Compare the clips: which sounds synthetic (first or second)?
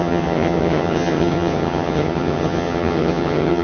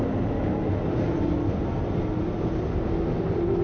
first